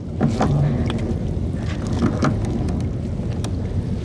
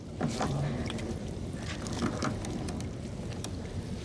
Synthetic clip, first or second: second